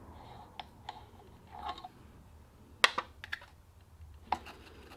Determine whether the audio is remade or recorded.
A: recorded